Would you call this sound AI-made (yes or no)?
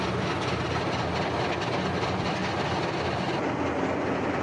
yes